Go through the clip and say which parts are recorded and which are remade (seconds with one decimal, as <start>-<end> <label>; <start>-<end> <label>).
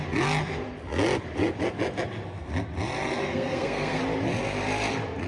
0.0-3.2 recorded; 3.2-4.0 remade; 4.0-5.3 recorded